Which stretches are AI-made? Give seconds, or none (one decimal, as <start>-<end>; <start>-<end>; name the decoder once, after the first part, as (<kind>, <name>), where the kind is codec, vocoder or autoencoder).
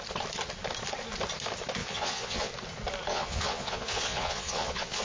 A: 1.8-2.5 (vocoder, Vocos); 3.1-5.0